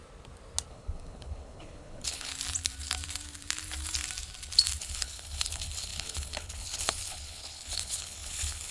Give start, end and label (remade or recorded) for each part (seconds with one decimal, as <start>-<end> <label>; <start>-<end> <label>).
0.0-0.7 recorded; 0.7-2.3 remade; 2.3-4.8 recorded; 4.8-8.7 remade